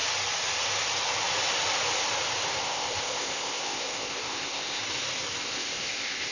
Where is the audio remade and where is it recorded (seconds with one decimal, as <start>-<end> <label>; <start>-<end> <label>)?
0.0-2.6 recorded; 2.6-4.8 remade; 4.8-5.4 recorded; 5.4-6.3 remade